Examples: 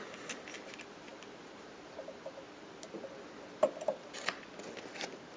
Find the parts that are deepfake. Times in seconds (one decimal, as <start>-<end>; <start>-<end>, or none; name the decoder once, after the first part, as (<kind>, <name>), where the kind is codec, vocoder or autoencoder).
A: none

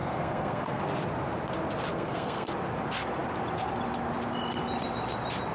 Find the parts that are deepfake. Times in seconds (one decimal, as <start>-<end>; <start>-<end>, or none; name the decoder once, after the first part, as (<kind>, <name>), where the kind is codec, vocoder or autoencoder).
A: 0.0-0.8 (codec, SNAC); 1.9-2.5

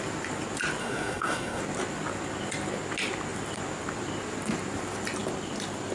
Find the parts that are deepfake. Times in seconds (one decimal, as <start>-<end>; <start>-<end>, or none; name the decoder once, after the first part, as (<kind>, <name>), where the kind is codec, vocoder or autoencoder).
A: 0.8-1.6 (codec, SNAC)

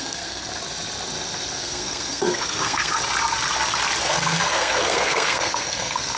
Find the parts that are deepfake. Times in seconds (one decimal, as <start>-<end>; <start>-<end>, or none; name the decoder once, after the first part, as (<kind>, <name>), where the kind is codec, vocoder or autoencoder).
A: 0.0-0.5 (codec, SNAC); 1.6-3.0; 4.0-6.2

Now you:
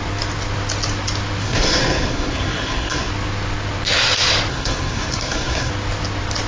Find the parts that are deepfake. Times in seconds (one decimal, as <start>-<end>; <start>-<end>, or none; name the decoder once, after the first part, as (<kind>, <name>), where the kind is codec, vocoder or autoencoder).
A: 1.4-3.1 (codec, SNAC); 4.5-5.7

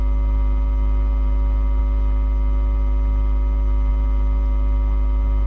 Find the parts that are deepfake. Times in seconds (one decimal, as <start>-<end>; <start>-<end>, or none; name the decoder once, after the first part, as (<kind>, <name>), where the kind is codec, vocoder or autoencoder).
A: none

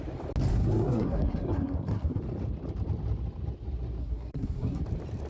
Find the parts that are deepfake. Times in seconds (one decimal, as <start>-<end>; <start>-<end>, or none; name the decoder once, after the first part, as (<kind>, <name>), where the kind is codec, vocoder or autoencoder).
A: 0.5-2.2 (codec, SNAC); 4.0-4.8